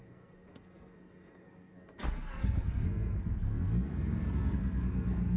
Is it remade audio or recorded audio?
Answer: remade